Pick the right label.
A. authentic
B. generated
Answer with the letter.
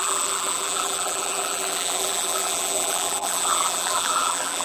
B